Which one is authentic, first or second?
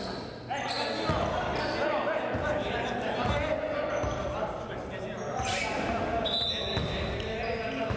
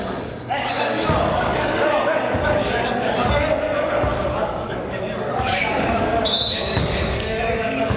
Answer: first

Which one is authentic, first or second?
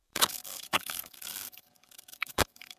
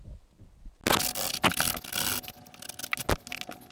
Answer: second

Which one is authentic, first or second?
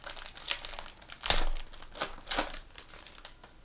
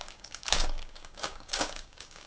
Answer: first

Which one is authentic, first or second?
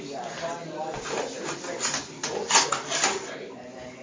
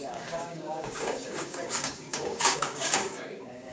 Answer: first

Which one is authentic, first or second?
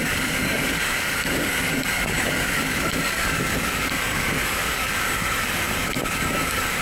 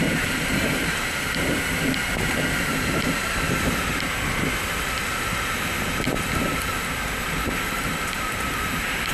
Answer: second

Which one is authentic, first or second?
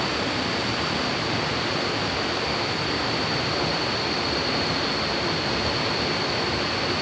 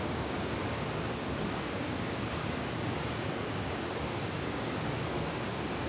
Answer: first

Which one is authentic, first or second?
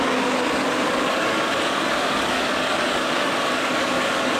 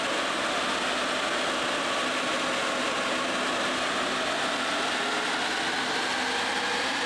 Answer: second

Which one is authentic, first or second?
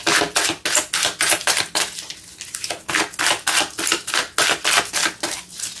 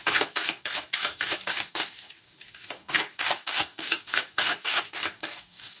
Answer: first